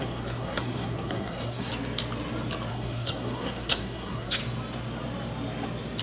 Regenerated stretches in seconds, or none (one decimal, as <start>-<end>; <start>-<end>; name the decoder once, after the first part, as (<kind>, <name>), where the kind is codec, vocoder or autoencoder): 0.0-1.7 (codec, SNAC); 2.7-4.4